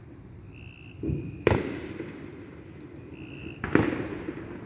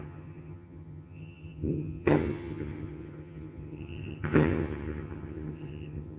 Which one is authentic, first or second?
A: first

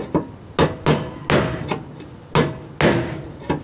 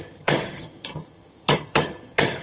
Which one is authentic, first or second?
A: first